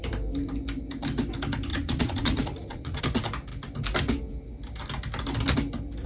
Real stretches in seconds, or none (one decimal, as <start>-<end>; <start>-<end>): 0.0-1.7; 3.0-6.1